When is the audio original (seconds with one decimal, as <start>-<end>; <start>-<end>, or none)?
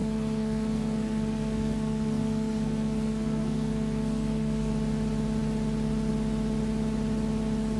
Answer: 4.7-7.8